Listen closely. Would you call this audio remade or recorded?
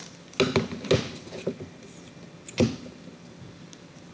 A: recorded